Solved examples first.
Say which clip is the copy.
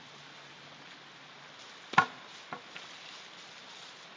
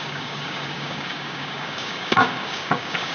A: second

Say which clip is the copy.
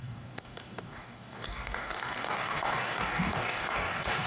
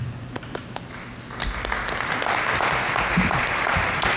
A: first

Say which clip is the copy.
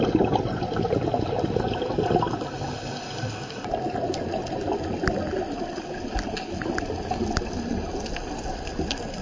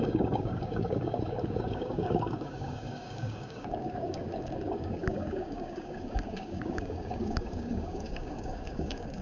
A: second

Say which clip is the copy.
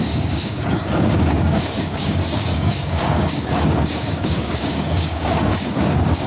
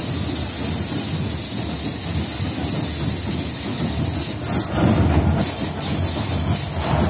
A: first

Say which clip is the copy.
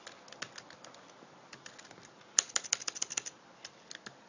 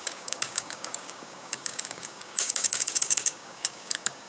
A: second